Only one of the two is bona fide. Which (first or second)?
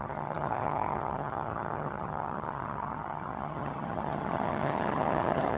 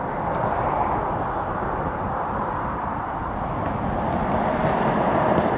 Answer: second